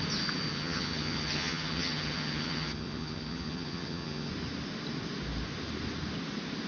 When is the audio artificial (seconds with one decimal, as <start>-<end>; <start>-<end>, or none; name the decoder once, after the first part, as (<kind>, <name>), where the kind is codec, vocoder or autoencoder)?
0.5-4.3 (vocoder, HiFi-GAN)